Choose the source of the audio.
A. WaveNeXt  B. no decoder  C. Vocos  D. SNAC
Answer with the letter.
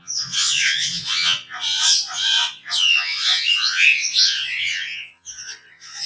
C